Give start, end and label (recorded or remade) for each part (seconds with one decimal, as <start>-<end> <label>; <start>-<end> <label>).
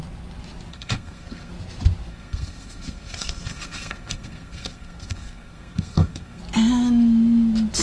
0.0-0.7 recorded; 0.7-1.5 remade; 1.5-2.1 recorded; 2.1-6.4 remade; 6.4-7.8 recorded